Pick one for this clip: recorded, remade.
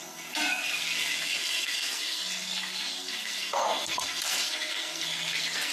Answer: remade